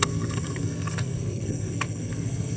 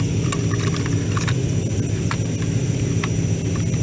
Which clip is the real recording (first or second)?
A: second